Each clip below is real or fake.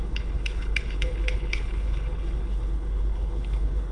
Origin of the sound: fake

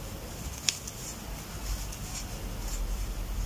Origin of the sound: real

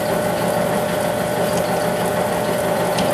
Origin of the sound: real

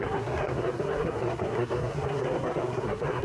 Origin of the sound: fake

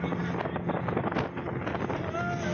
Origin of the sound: real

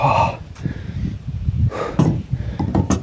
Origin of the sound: fake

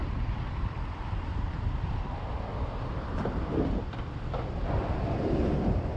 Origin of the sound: fake